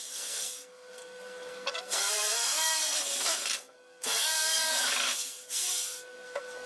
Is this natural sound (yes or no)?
no